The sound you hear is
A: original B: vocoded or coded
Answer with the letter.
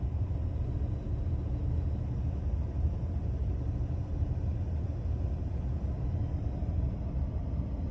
A